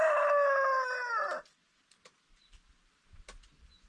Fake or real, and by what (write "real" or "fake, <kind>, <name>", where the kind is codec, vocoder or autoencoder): real